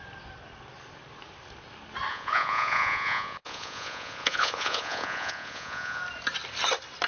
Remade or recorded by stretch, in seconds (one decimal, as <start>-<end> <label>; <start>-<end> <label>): 0.0-2.1 recorded; 2.1-6.0 remade; 6.0-7.1 recorded